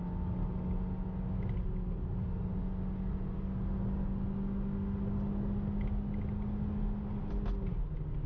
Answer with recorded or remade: recorded